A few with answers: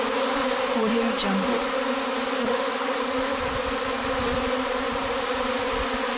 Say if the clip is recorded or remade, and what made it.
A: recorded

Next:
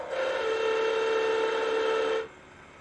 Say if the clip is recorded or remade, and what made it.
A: recorded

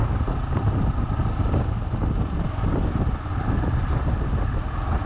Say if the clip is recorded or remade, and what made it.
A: recorded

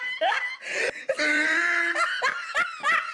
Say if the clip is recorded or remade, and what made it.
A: recorded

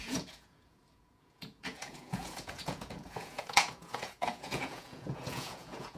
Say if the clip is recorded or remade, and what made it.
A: remade, vocoder, Vocos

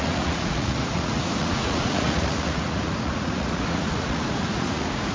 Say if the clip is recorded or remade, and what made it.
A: remade, vocoder, Vocos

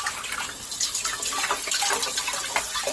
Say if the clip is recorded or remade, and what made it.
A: recorded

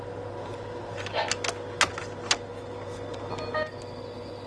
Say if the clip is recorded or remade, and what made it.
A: recorded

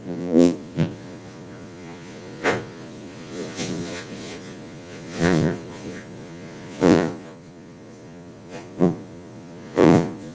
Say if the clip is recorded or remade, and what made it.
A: remade, vocoder, Vocos